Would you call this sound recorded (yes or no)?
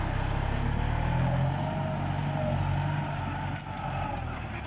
yes